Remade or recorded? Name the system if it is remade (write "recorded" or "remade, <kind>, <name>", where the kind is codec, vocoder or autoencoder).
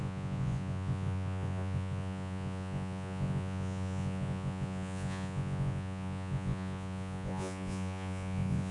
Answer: remade, vocoder, Vocos